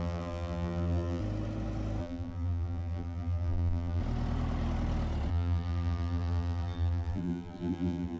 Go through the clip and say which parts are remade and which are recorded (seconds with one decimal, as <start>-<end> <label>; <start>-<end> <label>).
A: 0.0-1.2 remade; 1.2-2.0 recorded; 2.0-4.0 remade; 4.0-5.3 recorded; 5.3-8.2 remade